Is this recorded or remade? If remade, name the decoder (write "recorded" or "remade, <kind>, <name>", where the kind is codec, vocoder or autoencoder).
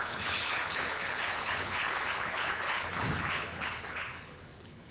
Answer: remade, codec, HILCodec